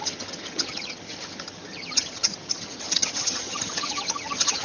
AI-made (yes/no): yes